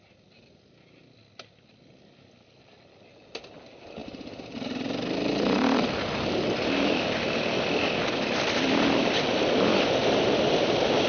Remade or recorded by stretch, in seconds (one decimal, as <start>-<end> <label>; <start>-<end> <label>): 0.0-4.0 recorded; 4.0-8.0 remade; 8.0-10.0 recorded; 10.0-11.1 remade